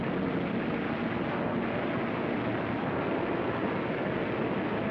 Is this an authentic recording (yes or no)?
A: yes